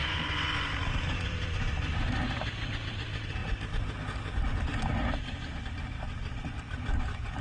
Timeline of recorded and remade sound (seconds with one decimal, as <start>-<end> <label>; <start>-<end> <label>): 0.0-0.7 remade; 0.7-7.4 recorded